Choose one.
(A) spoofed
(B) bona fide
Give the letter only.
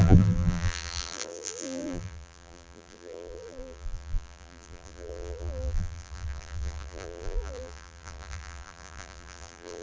A